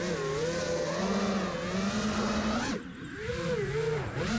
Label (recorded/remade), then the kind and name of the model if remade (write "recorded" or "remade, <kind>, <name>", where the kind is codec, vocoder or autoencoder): recorded